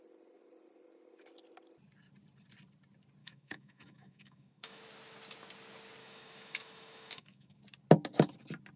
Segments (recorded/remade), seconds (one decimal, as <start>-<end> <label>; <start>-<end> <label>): 0.0-3.2 recorded; 3.2-4.8 remade; 4.8-6.0 recorded; 6.0-7.6 remade; 7.6-8.8 recorded

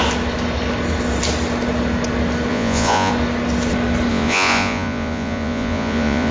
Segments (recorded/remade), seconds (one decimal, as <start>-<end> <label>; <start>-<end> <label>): 0.0-2.5 recorded; 2.5-3.1 remade; 3.1-4.1 recorded; 4.1-6.3 remade

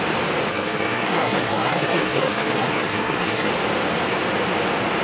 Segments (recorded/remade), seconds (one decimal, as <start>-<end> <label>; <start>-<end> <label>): 0.0-0.5 recorded; 0.5-3.5 remade; 3.5-5.0 recorded